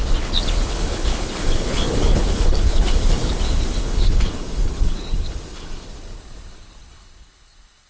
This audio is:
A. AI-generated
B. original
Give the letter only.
A